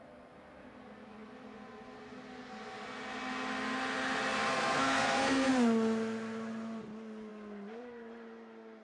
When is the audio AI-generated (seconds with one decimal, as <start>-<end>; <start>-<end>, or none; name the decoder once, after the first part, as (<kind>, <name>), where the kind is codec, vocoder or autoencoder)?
4.5-5.5 (codec, SNAC)